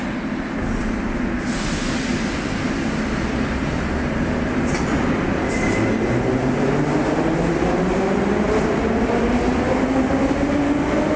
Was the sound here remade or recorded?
recorded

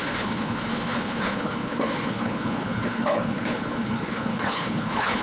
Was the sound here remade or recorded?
remade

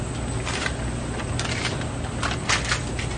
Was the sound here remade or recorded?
recorded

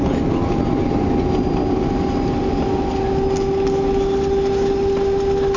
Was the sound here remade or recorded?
recorded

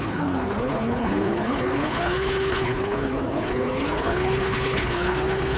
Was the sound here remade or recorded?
remade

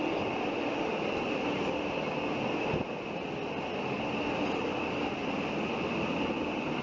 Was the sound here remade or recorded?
recorded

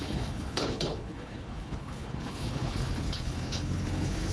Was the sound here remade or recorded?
remade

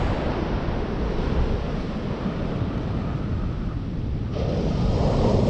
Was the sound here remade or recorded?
recorded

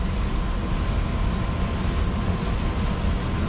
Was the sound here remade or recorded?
recorded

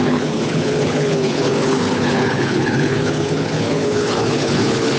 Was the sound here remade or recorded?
remade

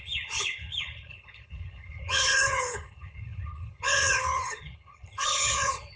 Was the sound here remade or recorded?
remade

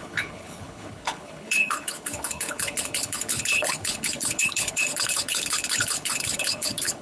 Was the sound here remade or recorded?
remade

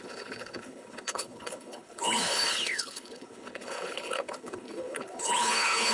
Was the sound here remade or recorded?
remade